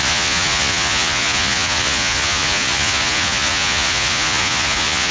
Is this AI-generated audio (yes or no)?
yes